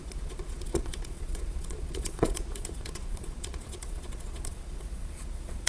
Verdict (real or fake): fake